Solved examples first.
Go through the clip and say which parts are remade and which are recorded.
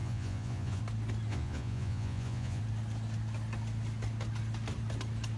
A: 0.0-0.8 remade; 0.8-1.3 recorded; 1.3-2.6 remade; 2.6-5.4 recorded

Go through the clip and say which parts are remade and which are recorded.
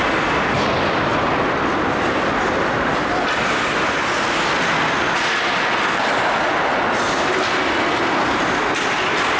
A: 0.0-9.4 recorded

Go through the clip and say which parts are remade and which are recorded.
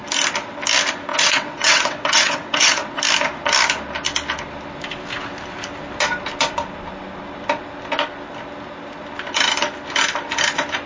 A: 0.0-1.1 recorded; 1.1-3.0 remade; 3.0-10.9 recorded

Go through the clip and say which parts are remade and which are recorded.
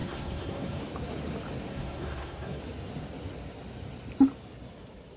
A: 0.0-0.8 remade; 0.8-1.7 recorded; 1.7-2.6 remade; 2.6-5.2 recorded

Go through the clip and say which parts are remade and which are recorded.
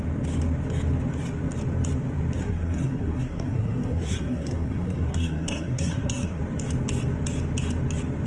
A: 0.0-2.4 recorded; 2.4-6.4 remade; 6.4-8.3 recorded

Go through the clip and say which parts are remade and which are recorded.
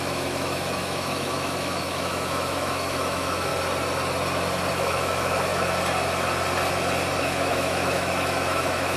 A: 0.0-3.5 remade; 3.5-4.7 recorded; 4.7-5.5 remade; 5.5-7.2 recorded; 7.2-9.0 remade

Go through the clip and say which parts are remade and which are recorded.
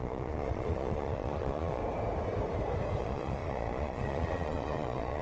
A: 0.0-1.8 remade; 1.8-3.0 recorded; 3.0-5.2 remade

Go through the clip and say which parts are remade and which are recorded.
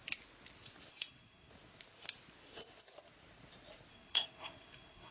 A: 0.0-0.9 recorded; 0.9-1.5 remade; 1.5-3.9 recorded; 3.9-5.1 remade